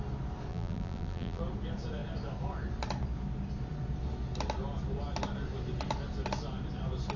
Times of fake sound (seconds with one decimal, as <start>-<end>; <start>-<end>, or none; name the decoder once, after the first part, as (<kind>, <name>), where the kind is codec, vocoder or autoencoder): 0.5-1.4 (vocoder, BigVGAN v2)